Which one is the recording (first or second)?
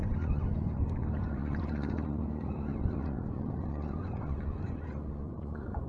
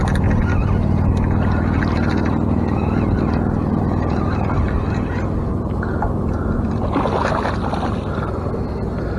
second